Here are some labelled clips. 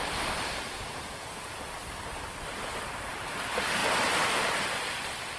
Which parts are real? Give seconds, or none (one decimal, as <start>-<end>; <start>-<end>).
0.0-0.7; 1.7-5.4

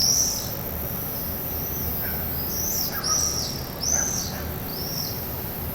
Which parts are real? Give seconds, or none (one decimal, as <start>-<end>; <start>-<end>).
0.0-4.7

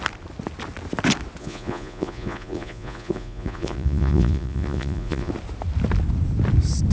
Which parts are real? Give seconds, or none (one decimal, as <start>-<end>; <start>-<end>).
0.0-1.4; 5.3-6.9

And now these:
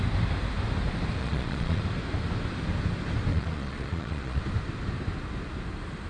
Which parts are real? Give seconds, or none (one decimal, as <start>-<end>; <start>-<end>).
0.0-1.2; 1.8-3.3; 4.4-6.1

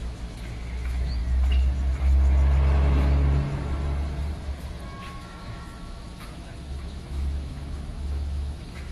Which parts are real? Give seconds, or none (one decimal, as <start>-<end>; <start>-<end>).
1.2-5.0

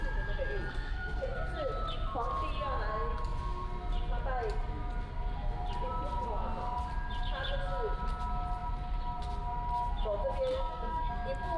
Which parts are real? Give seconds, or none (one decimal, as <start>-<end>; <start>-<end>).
0.0-0.7; 1.5-10.5; 11.1-11.6

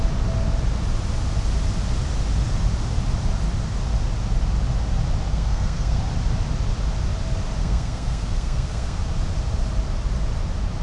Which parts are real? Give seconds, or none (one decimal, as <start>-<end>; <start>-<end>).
0.0-5.3; 6.0-7.6; 9.0-10.8

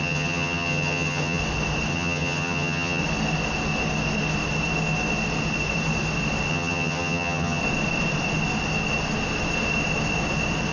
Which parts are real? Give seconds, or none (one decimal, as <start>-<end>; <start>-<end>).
1.4-1.9; 3.0-6.5; 7.6-10.7